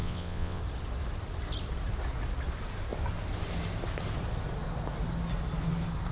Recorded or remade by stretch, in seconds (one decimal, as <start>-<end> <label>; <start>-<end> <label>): 0.0-0.6 remade; 0.6-6.1 recorded